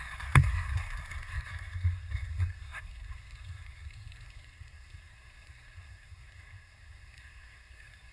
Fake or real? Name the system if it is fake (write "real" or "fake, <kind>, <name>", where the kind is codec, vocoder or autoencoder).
fake, codec, SNAC